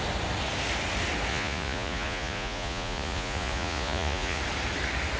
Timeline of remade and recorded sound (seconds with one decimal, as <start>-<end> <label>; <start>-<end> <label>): 0.0-1.3 recorded; 1.3-4.4 remade; 4.4-5.2 recorded